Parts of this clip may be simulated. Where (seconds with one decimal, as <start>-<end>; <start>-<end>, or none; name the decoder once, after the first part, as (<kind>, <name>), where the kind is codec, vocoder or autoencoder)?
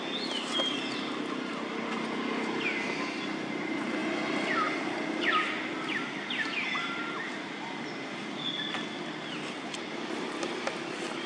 none